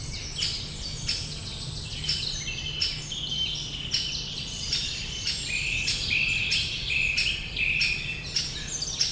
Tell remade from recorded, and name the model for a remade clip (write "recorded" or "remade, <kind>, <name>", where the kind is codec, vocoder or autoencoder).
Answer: recorded